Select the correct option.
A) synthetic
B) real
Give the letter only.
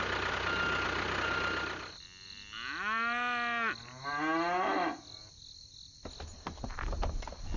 B